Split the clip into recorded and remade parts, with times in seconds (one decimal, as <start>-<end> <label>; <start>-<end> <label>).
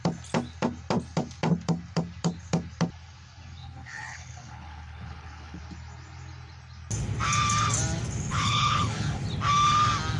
0.0-3.6 recorded; 3.6-5.6 remade; 5.6-8.3 recorded; 8.3-9.2 remade; 9.2-10.2 recorded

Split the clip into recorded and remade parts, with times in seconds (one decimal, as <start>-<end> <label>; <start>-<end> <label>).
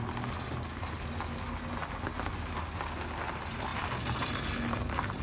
0.0-5.2 recorded